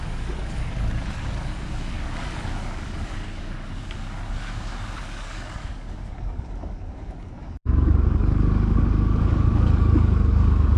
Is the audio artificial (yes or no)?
yes